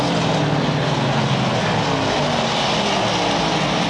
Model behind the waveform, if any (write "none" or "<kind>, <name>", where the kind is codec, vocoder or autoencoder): none